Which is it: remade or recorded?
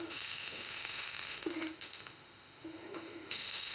remade